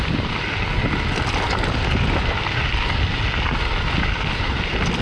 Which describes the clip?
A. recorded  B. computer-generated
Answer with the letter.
A